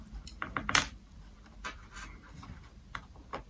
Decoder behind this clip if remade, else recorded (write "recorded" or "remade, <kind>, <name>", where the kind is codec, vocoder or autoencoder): remade, vocoder, BigVGAN v2